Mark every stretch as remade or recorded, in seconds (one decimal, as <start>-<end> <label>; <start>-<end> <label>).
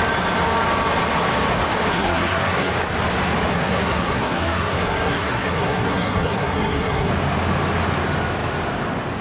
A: 0.0-1.9 recorded; 1.9-2.7 remade; 2.7-3.5 recorded; 3.5-7.1 remade; 7.1-9.2 recorded